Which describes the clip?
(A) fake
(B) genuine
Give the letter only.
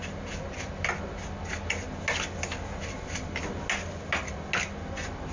B